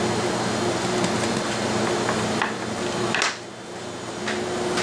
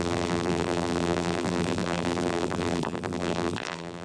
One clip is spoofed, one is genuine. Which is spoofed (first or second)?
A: second